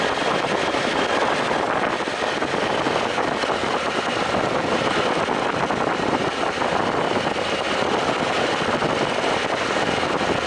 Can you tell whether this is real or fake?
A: real